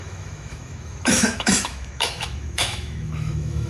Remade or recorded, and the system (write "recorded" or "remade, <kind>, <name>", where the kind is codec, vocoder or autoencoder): remade, autoencoder, DAC-VAE